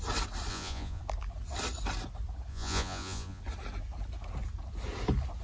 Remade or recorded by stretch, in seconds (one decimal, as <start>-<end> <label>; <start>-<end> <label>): 0.0-0.5 recorded; 0.5-1.0 remade; 1.0-2.5 recorded; 2.5-3.4 remade; 3.4-5.4 recorded